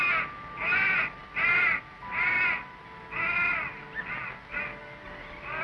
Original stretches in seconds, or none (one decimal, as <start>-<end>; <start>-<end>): 0.0-5.6